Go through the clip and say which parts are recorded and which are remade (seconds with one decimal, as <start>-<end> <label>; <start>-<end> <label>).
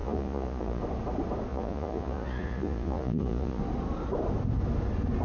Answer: 0.0-0.8 remade; 0.8-1.5 recorded; 1.5-3.6 remade; 3.6-5.2 recorded